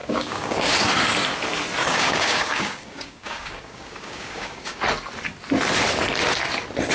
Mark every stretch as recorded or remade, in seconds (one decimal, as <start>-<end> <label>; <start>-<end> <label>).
0.0-0.7 remade; 0.7-1.8 recorded; 1.8-4.8 remade; 4.8-6.9 recorded

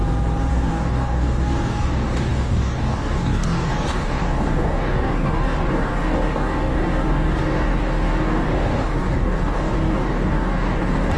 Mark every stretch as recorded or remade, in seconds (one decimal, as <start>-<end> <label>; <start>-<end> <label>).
0.0-0.5 recorded; 0.5-11.2 remade

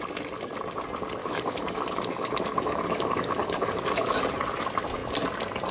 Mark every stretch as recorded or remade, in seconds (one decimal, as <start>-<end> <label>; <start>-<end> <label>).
0.0-1.2 recorded; 1.2-4.2 remade; 4.2-5.7 recorded

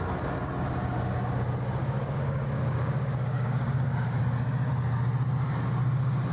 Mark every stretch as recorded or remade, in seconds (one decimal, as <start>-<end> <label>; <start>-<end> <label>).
0.0-1.8 recorded; 1.8-4.2 remade; 4.2-6.3 recorded

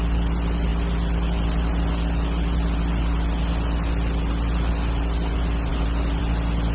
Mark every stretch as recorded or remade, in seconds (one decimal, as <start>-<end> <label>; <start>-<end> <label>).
0.0-6.7 recorded

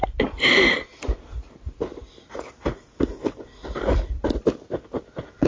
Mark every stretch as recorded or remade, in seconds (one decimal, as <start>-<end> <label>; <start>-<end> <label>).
0.0-5.5 recorded

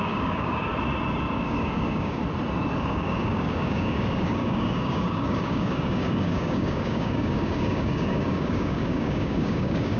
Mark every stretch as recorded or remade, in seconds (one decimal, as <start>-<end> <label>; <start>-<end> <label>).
0.0-0.7 remade; 0.7-1.3 recorded; 1.3-2.2 remade; 2.2-2.8 recorded; 2.8-10.0 remade